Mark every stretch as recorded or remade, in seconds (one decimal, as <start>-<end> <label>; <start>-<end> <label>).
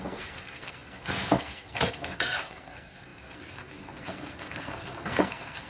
0.0-5.7 remade